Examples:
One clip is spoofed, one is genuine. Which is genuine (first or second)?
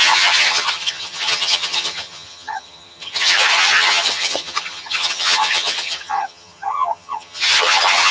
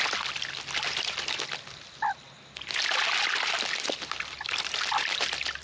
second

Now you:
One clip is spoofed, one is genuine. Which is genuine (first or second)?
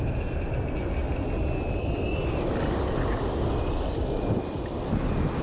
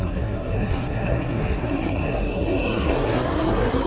first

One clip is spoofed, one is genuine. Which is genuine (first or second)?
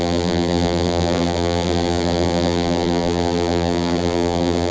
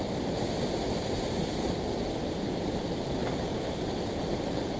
second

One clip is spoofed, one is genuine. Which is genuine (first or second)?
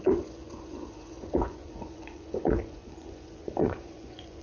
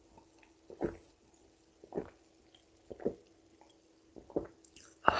second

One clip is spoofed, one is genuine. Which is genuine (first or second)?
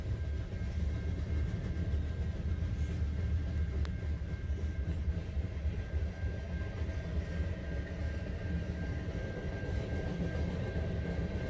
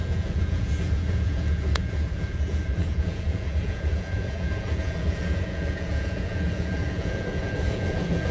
first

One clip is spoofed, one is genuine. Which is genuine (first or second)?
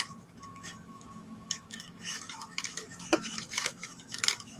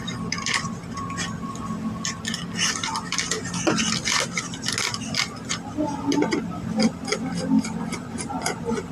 second